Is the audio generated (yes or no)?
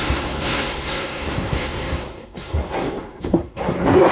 yes